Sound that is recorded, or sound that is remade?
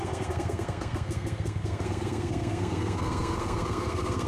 remade